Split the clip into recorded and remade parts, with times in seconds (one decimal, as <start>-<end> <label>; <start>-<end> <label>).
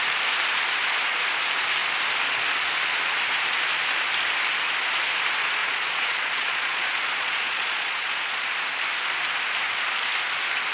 0.0-5.6 recorded; 5.6-8.5 remade; 8.5-10.7 recorded